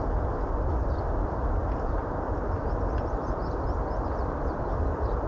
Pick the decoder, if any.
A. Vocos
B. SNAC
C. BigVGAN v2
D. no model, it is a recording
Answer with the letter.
D